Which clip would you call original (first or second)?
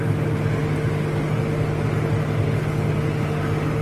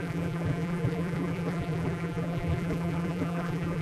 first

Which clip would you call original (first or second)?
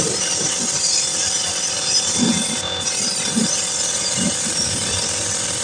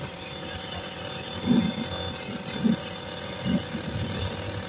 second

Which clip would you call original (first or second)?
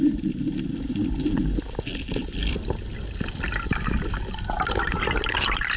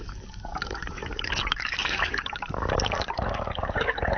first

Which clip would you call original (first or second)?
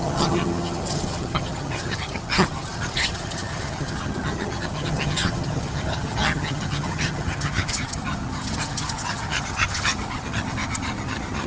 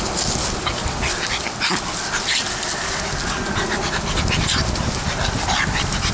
second